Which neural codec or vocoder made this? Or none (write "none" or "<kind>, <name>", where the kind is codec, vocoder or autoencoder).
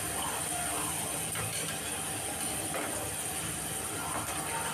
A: none